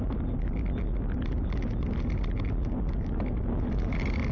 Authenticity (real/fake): real